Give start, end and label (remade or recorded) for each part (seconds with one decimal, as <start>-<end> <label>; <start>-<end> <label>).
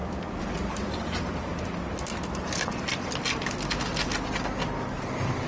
0.0-5.5 recorded